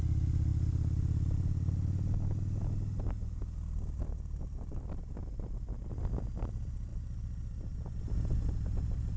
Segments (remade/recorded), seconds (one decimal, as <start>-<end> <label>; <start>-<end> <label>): 0.0-9.2 recorded